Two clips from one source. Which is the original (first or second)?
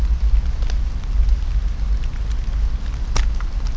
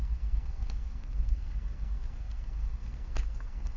first